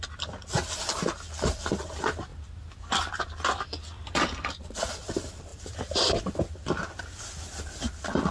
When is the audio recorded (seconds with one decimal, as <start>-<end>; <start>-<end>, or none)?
0.0-8.3